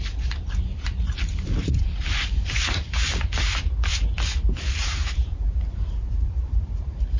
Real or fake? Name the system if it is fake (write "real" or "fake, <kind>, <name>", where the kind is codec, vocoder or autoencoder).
fake, vocoder, BigVGAN v2